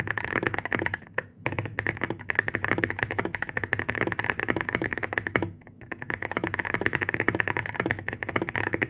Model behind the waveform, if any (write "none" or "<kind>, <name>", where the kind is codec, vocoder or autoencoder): autoencoder, DAC-VAE